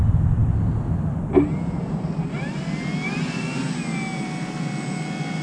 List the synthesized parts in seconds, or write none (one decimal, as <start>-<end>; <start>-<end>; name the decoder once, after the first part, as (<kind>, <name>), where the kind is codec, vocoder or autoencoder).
none